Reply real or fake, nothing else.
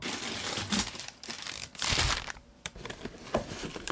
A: fake